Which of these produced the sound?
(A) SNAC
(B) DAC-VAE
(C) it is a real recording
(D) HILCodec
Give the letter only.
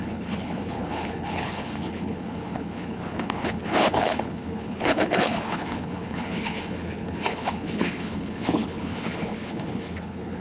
D